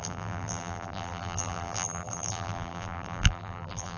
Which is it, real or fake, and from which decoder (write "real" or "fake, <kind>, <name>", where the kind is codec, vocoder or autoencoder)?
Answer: fake, vocoder, BigVGAN v2